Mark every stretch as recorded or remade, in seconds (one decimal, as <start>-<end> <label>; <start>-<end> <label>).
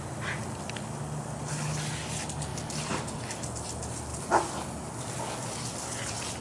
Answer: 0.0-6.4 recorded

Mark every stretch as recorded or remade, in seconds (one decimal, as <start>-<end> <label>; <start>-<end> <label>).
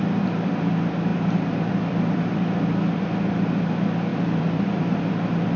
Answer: 0.0-1.1 recorded; 1.1-2.7 remade; 2.7-4.1 recorded; 4.1-5.1 remade; 5.1-5.6 recorded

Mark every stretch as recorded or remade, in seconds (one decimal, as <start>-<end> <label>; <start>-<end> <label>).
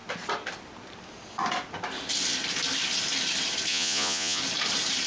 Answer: 0.0-3.7 recorded; 3.7-4.4 remade; 4.4-5.1 recorded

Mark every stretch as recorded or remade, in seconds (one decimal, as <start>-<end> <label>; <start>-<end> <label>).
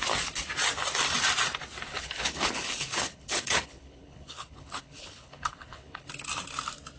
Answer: 0.0-1.9 recorded; 1.9-6.1 remade; 6.1-7.0 recorded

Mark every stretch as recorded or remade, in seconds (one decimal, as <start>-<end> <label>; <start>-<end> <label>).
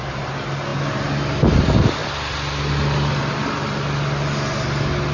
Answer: 0.0-5.1 recorded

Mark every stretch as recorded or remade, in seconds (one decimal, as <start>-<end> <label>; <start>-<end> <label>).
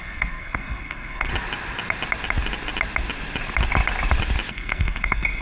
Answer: 0.0-1.3 remade; 1.3-4.5 recorded; 4.5-5.4 remade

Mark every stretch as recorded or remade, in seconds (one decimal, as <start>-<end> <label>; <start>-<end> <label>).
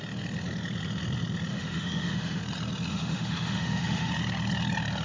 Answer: 0.0-1.5 recorded; 1.5-2.4 remade; 2.4-2.9 recorded; 2.9-4.1 remade; 4.1-5.0 recorded